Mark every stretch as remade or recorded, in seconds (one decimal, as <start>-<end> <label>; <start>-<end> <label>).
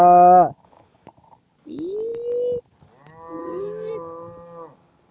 0.0-3.4 recorded; 3.4-3.9 remade; 3.9-5.1 recorded